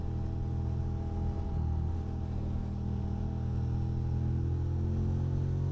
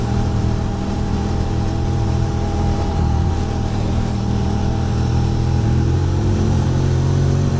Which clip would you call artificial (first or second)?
second